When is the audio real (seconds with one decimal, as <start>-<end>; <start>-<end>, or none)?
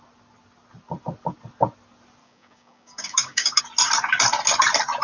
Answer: 0.0-2.2; 3.6-5.0